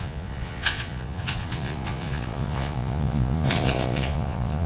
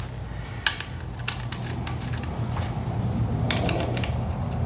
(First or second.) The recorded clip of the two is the second